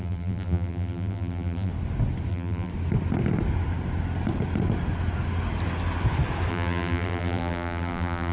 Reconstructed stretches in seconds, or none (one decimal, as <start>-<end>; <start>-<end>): 0.0-1.7; 2.3-2.7; 6.5-8.3